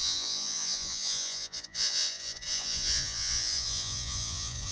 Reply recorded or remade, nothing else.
remade